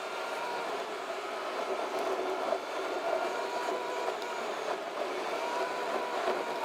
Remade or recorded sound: recorded